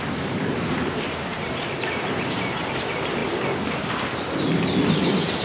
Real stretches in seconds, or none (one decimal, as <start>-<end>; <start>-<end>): 3.2-5.0